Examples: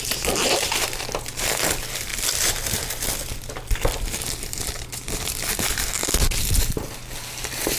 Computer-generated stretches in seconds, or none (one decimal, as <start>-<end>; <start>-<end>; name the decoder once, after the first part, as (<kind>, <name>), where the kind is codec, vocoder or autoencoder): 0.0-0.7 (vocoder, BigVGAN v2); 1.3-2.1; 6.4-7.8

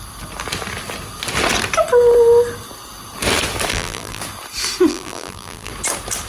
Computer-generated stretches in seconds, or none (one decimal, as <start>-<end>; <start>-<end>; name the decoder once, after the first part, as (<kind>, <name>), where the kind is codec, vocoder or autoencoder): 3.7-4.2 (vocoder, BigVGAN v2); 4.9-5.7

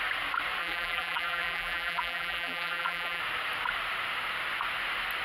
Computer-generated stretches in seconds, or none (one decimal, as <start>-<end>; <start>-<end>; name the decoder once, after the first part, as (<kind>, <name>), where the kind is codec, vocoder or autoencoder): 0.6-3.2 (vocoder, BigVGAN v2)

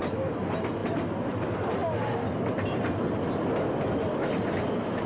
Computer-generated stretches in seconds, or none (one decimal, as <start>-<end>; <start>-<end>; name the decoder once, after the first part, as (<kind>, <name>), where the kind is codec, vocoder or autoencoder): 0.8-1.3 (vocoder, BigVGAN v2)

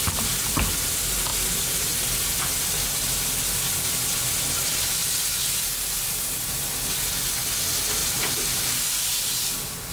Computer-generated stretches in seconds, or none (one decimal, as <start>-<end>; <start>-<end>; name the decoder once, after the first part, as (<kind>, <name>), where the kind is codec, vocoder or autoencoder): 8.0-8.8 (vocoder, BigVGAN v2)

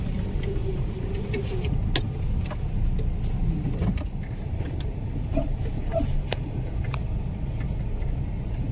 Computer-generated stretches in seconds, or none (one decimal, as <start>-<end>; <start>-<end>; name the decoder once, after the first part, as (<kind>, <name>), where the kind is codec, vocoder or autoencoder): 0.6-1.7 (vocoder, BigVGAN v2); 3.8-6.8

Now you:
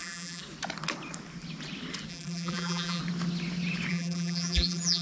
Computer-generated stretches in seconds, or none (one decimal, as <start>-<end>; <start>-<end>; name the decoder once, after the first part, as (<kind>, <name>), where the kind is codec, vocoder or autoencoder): 0.0-0.4 (vocoder, BigVGAN v2); 2.1-3.0; 3.9-5.0